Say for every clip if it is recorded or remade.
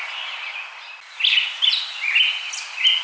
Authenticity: recorded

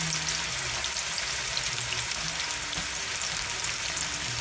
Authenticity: recorded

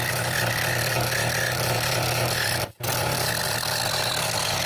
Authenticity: recorded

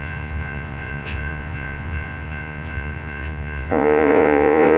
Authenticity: remade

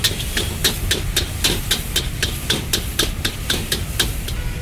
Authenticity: recorded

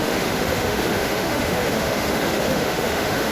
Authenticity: remade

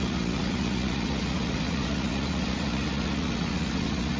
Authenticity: remade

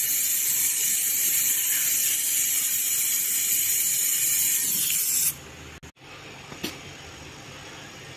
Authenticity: recorded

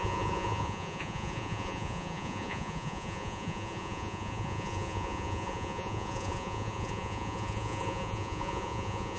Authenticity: remade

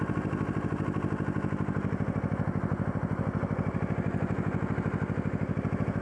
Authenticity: recorded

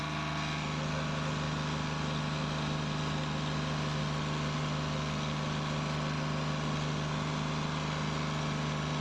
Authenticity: recorded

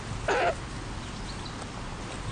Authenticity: recorded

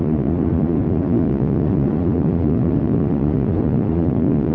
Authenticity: remade